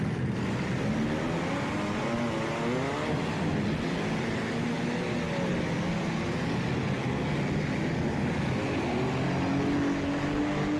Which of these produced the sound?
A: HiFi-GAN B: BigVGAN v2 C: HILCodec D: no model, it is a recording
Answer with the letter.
D